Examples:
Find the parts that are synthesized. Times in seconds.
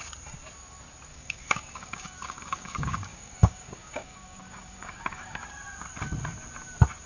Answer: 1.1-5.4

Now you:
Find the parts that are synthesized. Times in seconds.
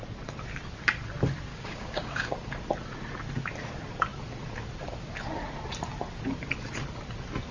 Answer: 1.5-2.3